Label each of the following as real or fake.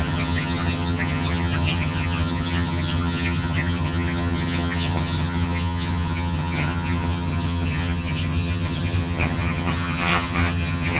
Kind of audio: fake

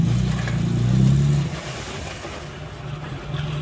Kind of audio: real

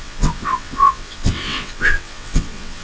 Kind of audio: fake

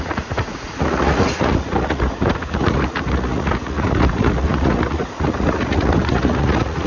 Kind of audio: fake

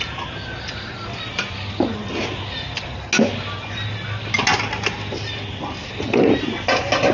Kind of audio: real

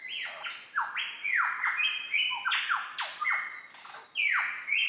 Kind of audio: real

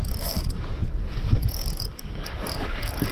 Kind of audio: fake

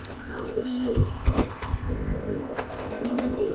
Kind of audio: fake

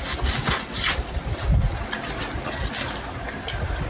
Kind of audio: real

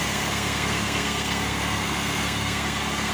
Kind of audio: fake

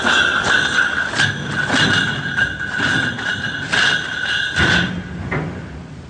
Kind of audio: real